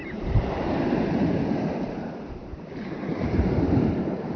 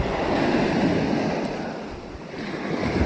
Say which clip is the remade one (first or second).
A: first